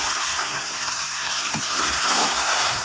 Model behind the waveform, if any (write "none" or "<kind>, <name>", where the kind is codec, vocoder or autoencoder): codec, SNAC